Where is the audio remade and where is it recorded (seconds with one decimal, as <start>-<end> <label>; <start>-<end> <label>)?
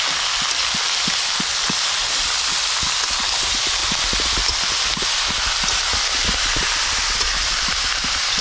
0.0-8.4 recorded